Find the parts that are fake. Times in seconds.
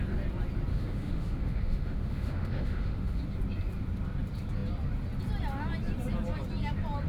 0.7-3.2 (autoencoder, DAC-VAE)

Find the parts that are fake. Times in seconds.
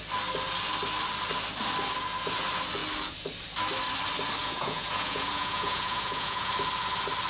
4.4-6.5 (vocoder, Vocos)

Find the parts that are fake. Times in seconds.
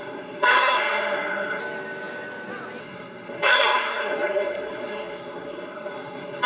0.0-1.6 (codec, SNAC); 2.8-6.5